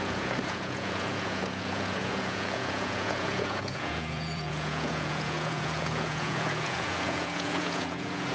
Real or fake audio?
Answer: fake